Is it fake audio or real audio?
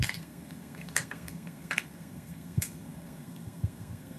fake